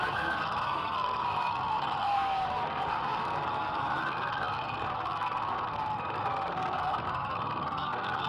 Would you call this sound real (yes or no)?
no